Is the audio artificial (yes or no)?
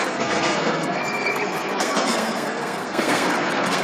yes